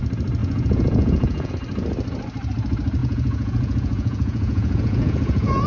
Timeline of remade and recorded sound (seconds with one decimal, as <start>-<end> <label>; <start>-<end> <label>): 0.0-0.4 recorded; 0.4-1.5 remade; 1.5-3.0 recorded; 3.0-5.7 remade